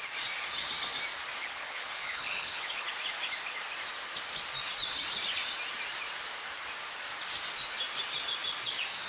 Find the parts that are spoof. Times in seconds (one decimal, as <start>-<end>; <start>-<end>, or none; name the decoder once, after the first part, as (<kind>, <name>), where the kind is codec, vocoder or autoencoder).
1.4-2.9 (codec, HILCodec)